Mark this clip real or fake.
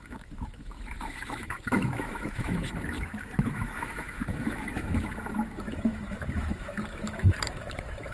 fake